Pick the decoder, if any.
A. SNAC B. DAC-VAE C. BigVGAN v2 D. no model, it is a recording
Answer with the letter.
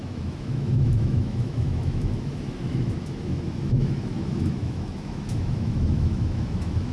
B